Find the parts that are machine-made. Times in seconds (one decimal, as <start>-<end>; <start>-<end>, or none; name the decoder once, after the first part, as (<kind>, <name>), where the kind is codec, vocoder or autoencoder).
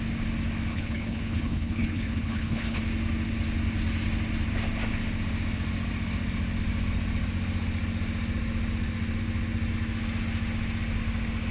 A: 0.7-2.8 (codec, HILCodec)